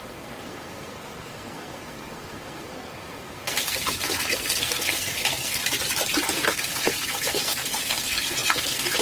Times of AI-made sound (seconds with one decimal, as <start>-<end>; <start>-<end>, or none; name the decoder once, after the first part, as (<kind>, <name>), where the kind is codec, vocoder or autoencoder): 0.0-5.6 (codec, SNAC); 6.3-9.0